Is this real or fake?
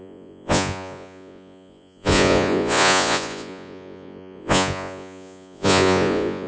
fake